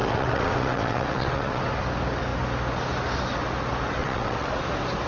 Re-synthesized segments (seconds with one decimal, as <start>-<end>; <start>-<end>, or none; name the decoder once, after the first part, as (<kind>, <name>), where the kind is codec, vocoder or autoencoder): 0.0-1.6 (vocoder, WaveNeXt); 4.0-4.5